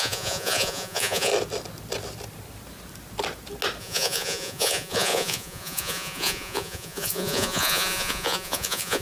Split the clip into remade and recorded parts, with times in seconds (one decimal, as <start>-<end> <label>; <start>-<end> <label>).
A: 0.0-1.3 remade; 1.3-3.8 recorded; 3.8-9.0 remade